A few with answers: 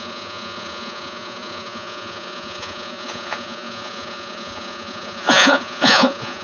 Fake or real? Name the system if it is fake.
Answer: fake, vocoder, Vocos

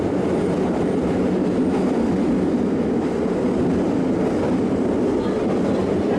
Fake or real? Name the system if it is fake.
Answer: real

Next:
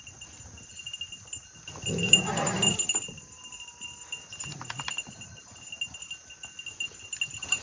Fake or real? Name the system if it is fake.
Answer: real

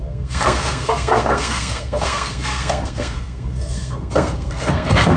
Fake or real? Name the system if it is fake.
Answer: fake, codec, SNAC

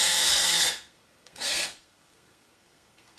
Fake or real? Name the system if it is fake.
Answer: fake, codec, SNAC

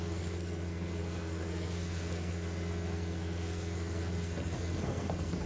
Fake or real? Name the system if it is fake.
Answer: fake, codec, SNAC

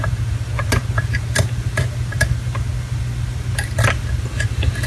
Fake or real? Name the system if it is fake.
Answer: real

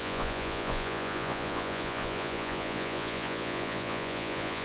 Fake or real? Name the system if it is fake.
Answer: fake, vocoder, Vocos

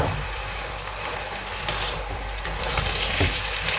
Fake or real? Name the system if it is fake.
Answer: fake, vocoder, BigVGAN v2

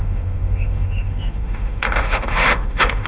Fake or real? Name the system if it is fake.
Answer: fake, autoencoder, DAC-VAE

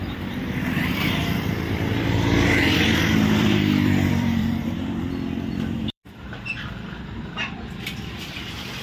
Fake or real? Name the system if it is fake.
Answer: fake, vocoder, BigVGAN v2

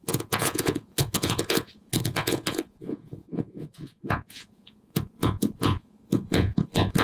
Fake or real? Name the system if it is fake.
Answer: fake, vocoder, Vocos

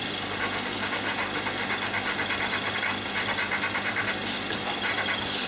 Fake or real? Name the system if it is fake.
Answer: real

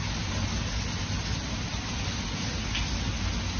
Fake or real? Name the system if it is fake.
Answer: real